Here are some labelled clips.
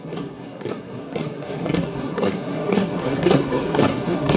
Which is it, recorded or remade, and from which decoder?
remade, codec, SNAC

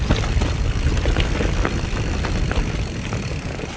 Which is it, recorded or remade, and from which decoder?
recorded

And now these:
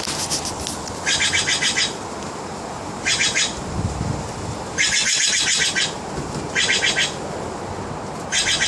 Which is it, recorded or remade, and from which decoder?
recorded